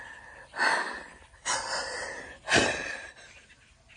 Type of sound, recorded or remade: recorded